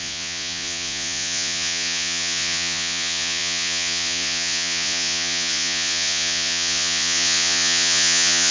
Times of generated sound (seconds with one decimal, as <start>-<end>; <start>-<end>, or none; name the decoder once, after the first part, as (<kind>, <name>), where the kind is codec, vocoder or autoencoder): 0.0-8.5 (vocoder, Vocos)